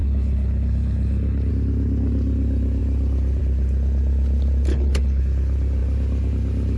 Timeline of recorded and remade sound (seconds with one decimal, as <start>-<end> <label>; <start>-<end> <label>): 0.0-1.5 remade; 1.5-4.7 recorded; 4.7-5.2 remade; 5.2-6.8 recorded

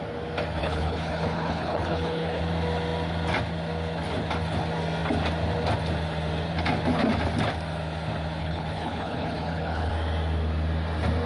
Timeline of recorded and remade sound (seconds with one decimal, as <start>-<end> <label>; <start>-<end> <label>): 0.0-0.6 recorded; 0.6-2.4 remade; 2.4-8.4 recorded; 8.4-9.9 remade; 9.9-11.3 recorded

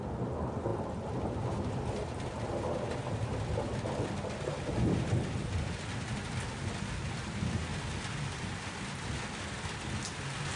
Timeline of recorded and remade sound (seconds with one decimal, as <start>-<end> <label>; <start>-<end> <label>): 0.0-10.6 recorded

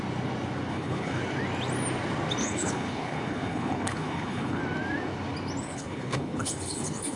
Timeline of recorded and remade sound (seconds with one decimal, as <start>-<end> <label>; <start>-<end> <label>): 0.0-0.7 recorded; 0.7-1.2 remade; 1.2-2.4 recorded; 2.4-4.6 remade; 4.6-5.6 recorded; 5.6-7.2 remade

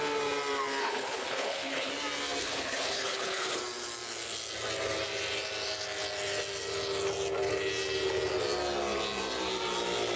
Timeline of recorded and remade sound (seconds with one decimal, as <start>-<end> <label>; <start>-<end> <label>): 0.0-0.8 recorded; 0.8-1.9 remade; 1.9-2.4 recorded; 2.4-3.6 remade; 3.6-10.2 recorded